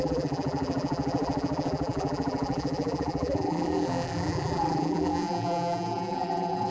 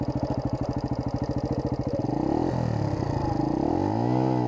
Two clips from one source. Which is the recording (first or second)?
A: second